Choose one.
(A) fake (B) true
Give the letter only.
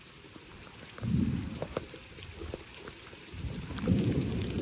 A